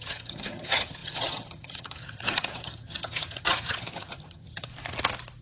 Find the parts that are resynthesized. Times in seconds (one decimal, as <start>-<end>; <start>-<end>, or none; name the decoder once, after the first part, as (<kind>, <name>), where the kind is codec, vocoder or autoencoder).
0.0-4.7 (vocoder, HiFi-GAN)